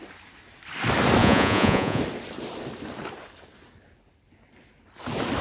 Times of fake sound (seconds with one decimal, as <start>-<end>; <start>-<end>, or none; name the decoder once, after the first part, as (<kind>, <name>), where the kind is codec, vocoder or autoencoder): 1.2-2.0 (vocoder, Vocos)